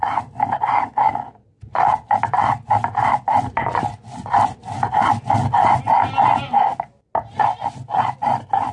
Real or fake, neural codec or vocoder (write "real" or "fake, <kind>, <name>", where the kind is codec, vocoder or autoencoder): real